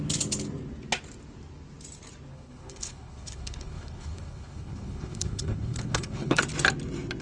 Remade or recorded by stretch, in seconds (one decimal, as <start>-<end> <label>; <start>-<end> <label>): 0.0-2.3 recorded; 2.3-6.4 remade; 6.4-7.2 recorded